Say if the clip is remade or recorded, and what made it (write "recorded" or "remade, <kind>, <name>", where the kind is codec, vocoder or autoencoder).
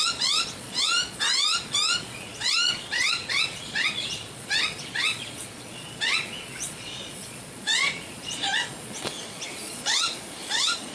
remade, vocoder, Vocos